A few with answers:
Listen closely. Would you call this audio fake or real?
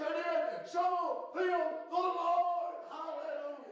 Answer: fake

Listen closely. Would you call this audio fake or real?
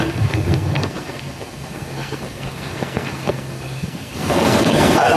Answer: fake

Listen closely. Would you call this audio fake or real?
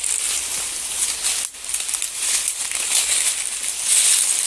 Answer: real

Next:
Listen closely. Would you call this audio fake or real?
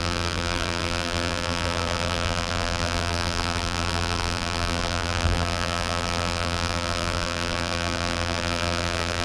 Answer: fake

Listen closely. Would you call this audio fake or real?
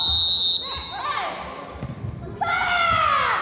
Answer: real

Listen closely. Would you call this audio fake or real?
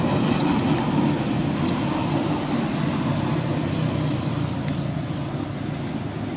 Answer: real